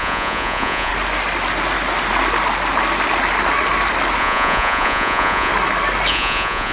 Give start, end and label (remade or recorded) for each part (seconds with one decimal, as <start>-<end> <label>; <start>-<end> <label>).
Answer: 0.0-0.9 remade; 0.9-4.2 recorded; 4.2-5.5 remade; 5.5-6.1 recorded; 6.1-6.7 remade